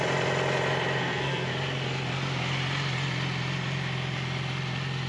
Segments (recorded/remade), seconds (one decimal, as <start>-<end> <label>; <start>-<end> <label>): 0.0-1.0 recorded; 1.0-1.5 remade; 1.5-5.1 recorded

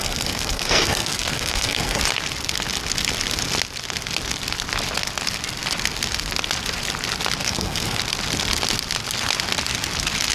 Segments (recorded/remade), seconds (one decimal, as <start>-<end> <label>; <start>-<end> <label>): 0.0-2.0 remade; 2.0-7.4 recorded; 7.4-8.0 remade; 8.0-10.3 recorded

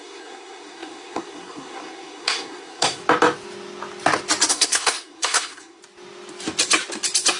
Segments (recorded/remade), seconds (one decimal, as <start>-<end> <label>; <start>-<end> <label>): 0.0-3.0 remade; 3.0-4.5 recorded; 4.5-5.8 remade; 5.8-7.4 recorded

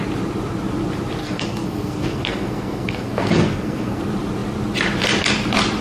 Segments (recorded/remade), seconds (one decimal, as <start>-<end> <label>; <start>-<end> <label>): 0.0-1.2 recorded; 1.2-4.0 remade; 4.0-5.8 recorded